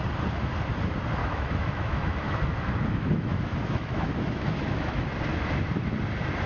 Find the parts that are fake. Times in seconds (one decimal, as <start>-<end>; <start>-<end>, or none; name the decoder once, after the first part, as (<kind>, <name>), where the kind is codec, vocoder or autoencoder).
1.2-5.1 (autoencoder, DAC-VAE)